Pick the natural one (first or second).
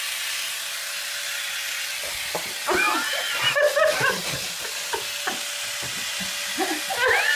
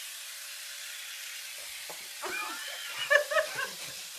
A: first